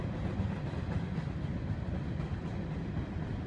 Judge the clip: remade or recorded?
recorded